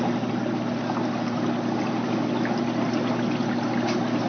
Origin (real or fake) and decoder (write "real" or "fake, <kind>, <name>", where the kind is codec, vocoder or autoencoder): real